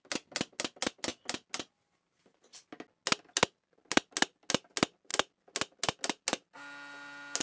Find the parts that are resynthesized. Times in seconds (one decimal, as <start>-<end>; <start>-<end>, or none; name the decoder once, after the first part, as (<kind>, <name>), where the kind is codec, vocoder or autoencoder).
none